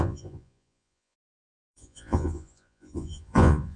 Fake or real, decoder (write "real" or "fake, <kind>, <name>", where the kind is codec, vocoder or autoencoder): fake, vocoder, Vocos